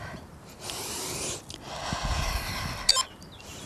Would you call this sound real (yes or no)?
yes